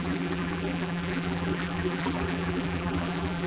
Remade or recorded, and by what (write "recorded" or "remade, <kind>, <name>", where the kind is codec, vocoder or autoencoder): remade, vocoder, BigVGAN v2